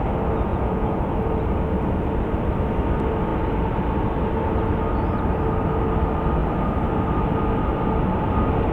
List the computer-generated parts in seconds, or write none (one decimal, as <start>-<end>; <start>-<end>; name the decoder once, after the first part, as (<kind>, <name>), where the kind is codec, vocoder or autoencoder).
0.5-1.0 (vocoder, Vocos)